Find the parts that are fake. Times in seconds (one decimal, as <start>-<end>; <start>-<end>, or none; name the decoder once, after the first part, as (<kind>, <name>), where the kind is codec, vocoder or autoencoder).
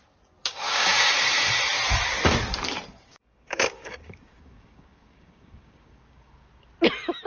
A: 0.4-1.1 (codec, DAC); 2.9-6.5